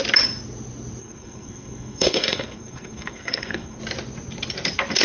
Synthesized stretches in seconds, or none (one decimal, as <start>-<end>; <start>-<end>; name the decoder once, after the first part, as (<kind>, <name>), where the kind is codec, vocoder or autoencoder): 1.0-3.8 (codec, SNAC)